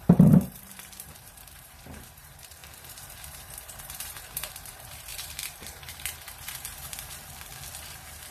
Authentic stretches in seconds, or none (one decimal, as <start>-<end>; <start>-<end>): 7.3-7.8